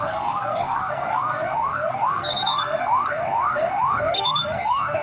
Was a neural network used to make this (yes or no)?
yes